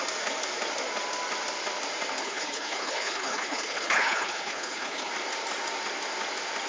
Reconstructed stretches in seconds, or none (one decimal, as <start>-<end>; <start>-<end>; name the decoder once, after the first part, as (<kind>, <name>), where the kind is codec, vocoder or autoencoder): 2.2-5.1 (codec, HILCodec)